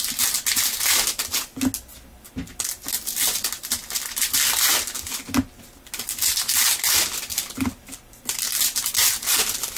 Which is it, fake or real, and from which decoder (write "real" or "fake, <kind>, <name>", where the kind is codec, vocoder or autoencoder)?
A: real